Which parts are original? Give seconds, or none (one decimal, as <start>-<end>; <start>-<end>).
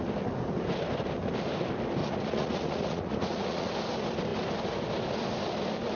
0.0-2.0; 3.7-6.0